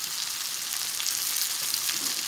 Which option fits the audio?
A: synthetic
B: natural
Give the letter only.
B